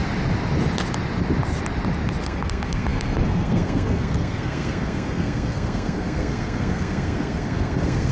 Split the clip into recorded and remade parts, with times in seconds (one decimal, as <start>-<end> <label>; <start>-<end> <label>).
0.0-2.2 recorded; 2.2-8.1 remade